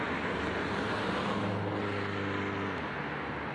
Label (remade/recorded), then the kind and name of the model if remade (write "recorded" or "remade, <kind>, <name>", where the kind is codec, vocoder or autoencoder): recorded